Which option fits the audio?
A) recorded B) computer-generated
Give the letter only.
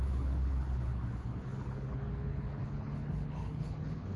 B